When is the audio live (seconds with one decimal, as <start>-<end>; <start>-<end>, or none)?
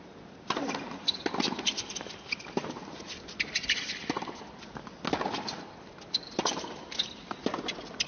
0.0-8.1